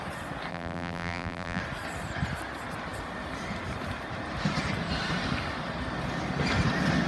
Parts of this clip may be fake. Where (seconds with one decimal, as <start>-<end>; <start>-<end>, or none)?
0.5-1.6